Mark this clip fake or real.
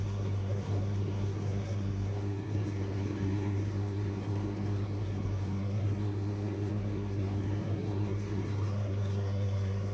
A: fake